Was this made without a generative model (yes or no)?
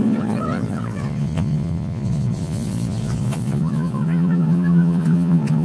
no